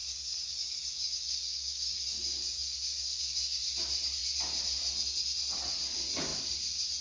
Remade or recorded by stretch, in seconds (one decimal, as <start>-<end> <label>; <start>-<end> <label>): 0.0-3.6 remade; 3.6-7.0 recorded